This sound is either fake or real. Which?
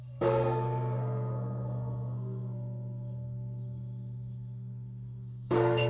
fake